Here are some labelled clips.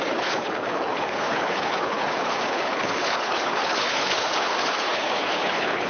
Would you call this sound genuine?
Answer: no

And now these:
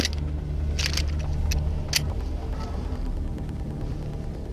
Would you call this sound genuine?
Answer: yes